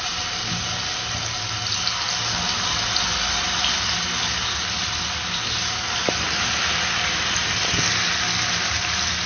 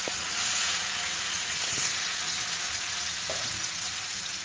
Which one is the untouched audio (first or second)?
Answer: first